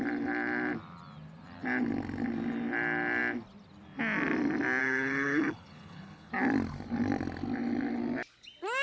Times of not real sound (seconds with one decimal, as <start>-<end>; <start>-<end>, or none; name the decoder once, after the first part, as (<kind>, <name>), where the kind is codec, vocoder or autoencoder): 4.8-6.3 (codec, HILCodec)